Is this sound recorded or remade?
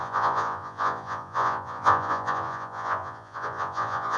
remade